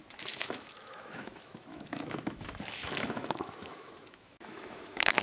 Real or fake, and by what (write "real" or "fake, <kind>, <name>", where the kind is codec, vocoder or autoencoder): fake, autoencoder, DAC-VAE